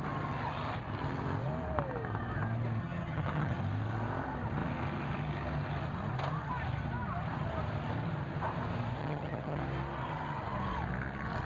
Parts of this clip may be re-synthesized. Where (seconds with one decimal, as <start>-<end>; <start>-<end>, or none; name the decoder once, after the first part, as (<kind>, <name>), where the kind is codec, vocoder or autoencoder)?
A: 2.8-3.6 (vocoder, HiFi-GAN); 9.0-9.6